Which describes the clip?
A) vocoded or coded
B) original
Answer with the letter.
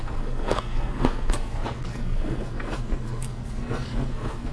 A